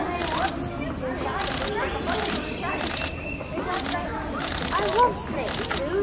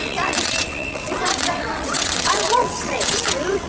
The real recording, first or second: first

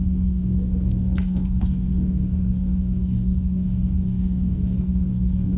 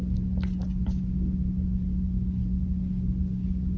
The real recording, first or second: second